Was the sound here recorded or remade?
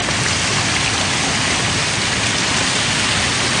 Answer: recorded